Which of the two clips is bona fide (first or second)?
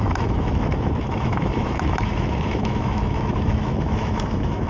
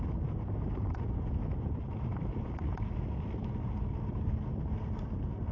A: second